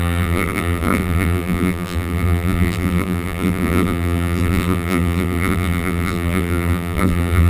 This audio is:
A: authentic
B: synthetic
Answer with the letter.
B